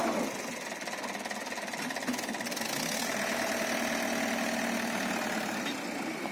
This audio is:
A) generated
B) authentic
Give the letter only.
B